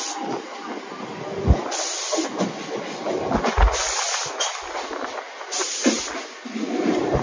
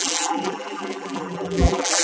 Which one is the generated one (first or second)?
second